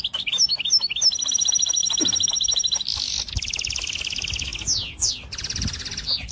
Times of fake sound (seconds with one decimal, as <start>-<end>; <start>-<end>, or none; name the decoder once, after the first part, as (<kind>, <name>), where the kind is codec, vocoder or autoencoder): 0.0-0.5 (vocoder, BigVGAN v2); 1.3-4.5; 5.1-6.3